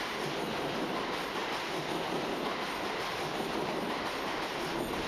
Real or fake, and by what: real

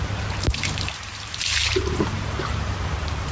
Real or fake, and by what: fake, vocoder, BigVGAN v2